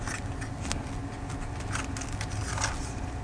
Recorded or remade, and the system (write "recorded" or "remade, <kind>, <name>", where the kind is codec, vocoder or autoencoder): recorded